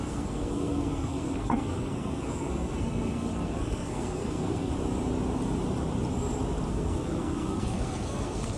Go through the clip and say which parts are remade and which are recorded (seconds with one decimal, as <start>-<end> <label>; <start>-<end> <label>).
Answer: 0.0-4.7 remade; 4.7-6.7 recorded; 6.7-8.6 remade